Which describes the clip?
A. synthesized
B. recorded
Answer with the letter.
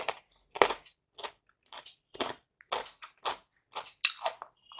B